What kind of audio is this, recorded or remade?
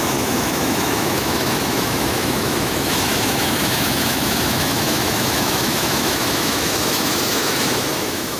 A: remade